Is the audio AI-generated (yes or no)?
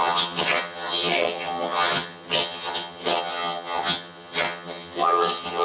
yes